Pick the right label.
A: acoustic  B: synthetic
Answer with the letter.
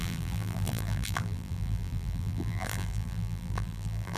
B